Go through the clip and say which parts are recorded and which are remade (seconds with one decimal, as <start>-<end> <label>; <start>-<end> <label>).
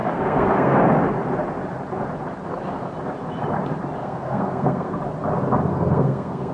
0.0-0.8 remade; 0.8-4.0 recorded; 4.0-5.0 remade; 5.0-5.7 recorded; 5.7-6.5 remade